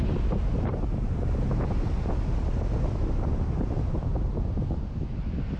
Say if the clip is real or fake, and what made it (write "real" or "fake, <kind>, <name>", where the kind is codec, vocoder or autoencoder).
real